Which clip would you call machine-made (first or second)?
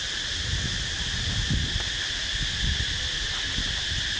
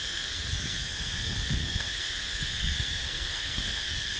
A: second